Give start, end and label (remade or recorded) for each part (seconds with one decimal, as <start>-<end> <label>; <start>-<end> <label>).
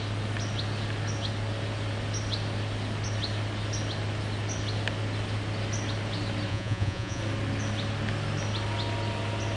0.0-6.5 recorded; 6.5-7.2 remade; 7.2-9.6 recorded